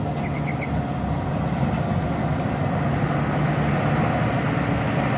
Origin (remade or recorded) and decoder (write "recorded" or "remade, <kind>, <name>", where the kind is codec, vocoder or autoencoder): recorded